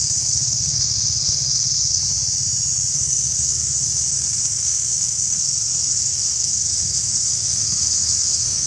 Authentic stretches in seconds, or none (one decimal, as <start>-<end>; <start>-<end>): 2.0-2.9